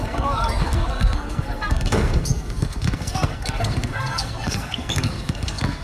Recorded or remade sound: remade